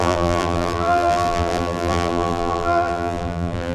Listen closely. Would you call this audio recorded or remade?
remade